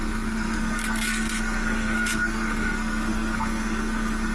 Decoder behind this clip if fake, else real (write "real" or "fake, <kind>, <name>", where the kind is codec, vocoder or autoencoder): fake, codec, SNAC